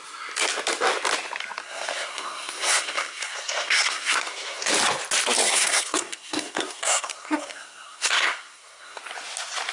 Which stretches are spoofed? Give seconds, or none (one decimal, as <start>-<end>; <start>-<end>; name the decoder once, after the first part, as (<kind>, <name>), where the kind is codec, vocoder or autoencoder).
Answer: 1.6-4.7 (codec, SNAC); 5.5-9.0